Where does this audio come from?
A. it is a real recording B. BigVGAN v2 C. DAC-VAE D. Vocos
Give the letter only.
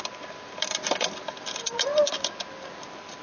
A